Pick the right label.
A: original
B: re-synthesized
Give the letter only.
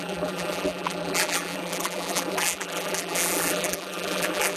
B